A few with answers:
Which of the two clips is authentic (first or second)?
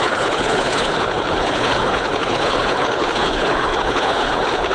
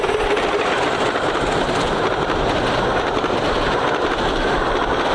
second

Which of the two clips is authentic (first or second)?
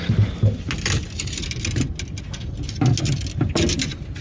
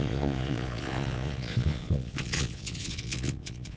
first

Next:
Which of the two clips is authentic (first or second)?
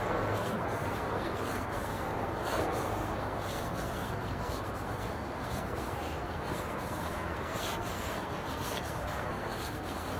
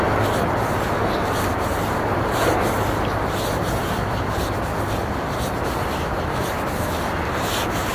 second